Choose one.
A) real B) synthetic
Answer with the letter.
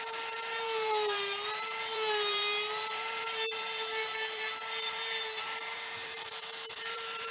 B